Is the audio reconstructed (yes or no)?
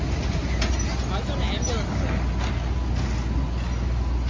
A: no